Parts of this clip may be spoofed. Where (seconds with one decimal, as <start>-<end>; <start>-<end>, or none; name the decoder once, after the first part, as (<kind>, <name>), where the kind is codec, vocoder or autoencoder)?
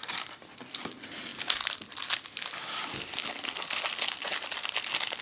none